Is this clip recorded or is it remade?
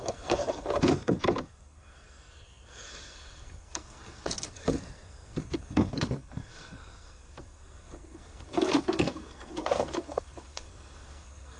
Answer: remade